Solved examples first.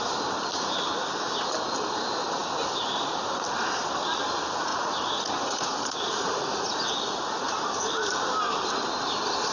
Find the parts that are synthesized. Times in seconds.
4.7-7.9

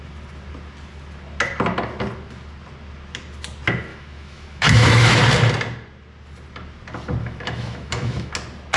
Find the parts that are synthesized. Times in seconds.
3.9-5.2; 7.2-8.3

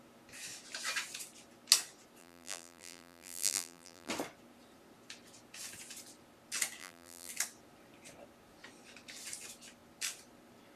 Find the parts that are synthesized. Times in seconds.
2.2-4.1; 6.8-7.3

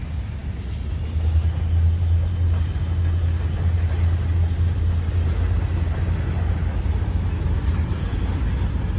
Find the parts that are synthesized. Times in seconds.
none

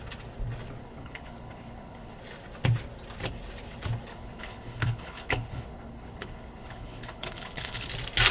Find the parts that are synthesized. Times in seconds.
0.8-2.2; 4.1-7.9

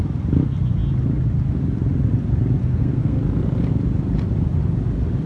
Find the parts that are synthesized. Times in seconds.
2.6-3.2